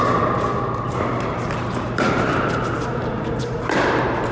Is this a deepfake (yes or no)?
yes